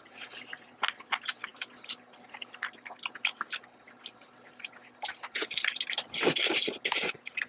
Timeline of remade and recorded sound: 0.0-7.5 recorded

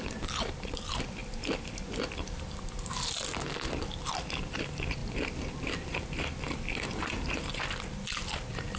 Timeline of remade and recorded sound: 0.0-1.2 recorded; 1.2-3.7 remade; 3.7-5.0 recorded; 5.0-8.8 remade

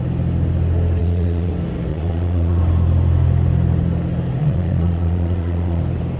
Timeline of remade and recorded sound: 0.0-1.0 recorded; 1.0-1.5 remade; 1.5-1.9 recorded; 1.9-2.6 remade; 2.6-4.4 recorded; 4.4-5.8 remade; 5.8-6.2 recorded

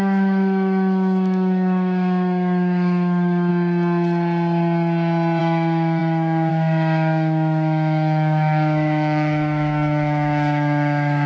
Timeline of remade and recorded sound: 0.0-3.5 remade; 3.5-5.4 recorded; 5.4-11.3 remade

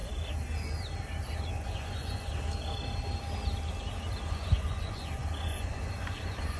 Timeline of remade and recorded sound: 0.0-1.5 recorded; 1.5-2.3 remade; 2.3-4.3 recorded; 4.3-6.6 remade

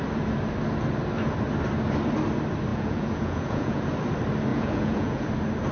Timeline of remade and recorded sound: 0.0-2.7 recorded; 2.7-3.9 remade; 3.9-4.5 recorded; 4.5-5.3 remade; 5.3-5.7 recorded

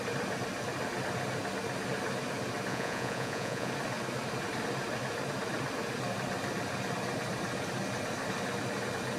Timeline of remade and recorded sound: 0.0-2.7 recorded; 2.7-3.7 remade; 3.7-9.2 recorded

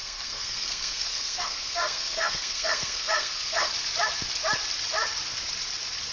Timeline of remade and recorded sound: 0.0-3.7 remade; 3.7-6.1 recorded